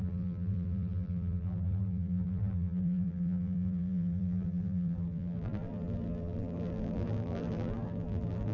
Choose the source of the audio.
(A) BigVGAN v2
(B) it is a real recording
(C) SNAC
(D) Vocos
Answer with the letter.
A